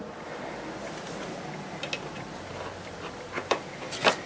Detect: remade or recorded recorded